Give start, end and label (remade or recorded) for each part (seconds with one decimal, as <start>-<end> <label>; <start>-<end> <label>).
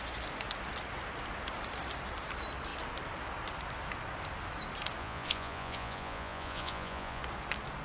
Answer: 0.0-5.0 recorded; 5.0-7.2 remade; 7.2-7.8 recorded